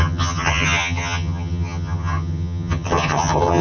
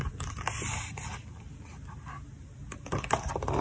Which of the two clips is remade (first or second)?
first